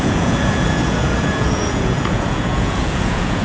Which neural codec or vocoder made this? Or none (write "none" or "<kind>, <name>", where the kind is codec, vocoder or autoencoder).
vocoder, Vocos